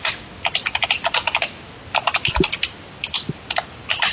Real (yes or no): yes